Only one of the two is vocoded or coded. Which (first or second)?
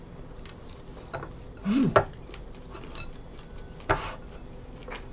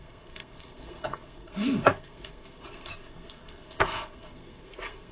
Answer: second